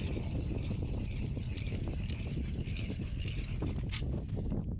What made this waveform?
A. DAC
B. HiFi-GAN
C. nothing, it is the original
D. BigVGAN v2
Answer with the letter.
C